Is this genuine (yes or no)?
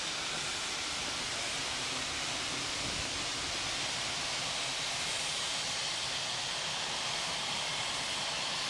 no